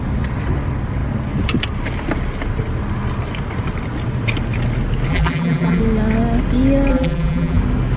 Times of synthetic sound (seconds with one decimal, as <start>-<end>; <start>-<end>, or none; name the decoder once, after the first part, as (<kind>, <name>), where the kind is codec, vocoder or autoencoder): 5.1-5.8 (vocoder, BigVGAN v2); 6.9-7.6

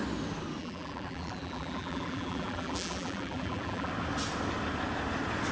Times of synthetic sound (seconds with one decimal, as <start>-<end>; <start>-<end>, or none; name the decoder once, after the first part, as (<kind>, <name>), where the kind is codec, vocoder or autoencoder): 0.6-3.9 (vocoder, BigVGAN v2)

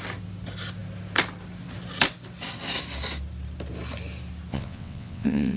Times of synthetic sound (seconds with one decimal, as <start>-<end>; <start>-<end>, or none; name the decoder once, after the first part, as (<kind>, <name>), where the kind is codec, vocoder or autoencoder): 4.5-5.6 (vocoder, WaveNeXt)

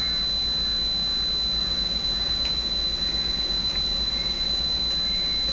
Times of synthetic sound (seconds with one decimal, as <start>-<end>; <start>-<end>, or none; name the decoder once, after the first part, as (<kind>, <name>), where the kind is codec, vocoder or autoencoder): 1.6-4.8 (vocoder, Vocos)

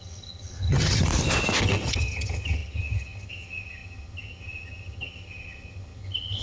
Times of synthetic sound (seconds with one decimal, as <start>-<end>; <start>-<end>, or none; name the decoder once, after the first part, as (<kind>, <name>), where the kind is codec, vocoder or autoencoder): 0.0-1.1 (vocoder, HiFi-GAN); 1.6-6.4

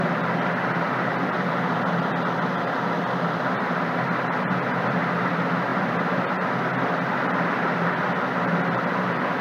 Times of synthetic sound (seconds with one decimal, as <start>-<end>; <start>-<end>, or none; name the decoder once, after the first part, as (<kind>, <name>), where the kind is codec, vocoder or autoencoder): none

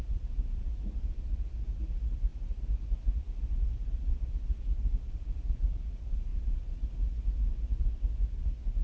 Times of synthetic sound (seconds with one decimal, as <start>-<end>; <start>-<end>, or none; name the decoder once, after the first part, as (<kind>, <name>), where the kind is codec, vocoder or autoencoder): none

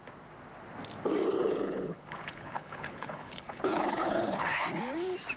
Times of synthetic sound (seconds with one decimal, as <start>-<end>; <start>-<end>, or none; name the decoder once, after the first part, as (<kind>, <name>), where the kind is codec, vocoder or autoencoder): 1.4-4.6 (codec, HILCodec)